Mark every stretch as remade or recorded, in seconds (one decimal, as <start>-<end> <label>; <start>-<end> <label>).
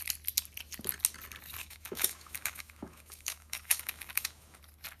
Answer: 0.0-1.6 recorded; 1.6-4.6 remade; 4.6-5.0 recorded